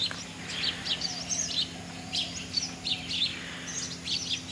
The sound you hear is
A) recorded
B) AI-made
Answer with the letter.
A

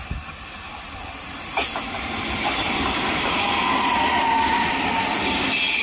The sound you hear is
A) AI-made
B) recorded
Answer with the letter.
B